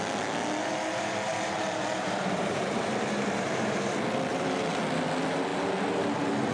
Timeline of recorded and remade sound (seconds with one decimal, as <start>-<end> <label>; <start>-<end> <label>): 0.0-0.6 recorded; 0.6-3.9 remade; 3.9-4.3 recorded; 4.3-4.8 remade; 4.8-6.5 recorded